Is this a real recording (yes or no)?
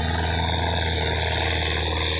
yes